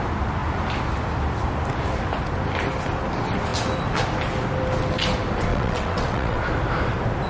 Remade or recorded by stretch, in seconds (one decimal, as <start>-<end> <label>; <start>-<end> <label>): 0.0-5.5 recorded; 5.5-6.4 remade; 6.4-7.3 recorded